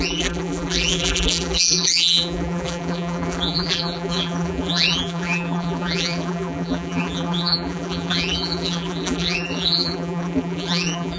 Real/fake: fake